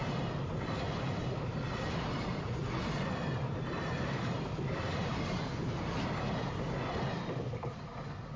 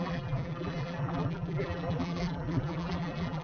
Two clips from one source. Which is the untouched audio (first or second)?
first